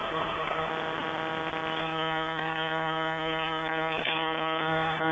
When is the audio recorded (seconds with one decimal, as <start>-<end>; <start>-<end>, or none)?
0.7-1.8